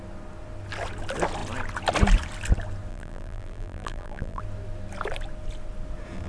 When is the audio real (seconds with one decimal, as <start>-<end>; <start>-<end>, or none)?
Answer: 0.0-2.9; 4.4-6.3